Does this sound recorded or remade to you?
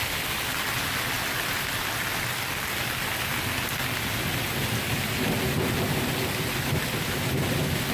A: recorded